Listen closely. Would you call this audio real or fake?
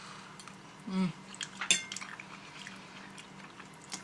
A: real